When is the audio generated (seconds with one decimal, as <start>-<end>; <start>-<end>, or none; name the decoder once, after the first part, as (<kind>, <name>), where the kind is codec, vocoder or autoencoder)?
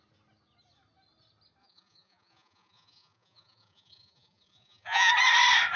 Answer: 1.6-5.1 (vocoder, Vocos)